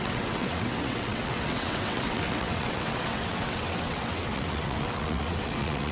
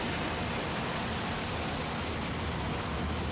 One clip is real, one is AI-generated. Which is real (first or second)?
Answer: second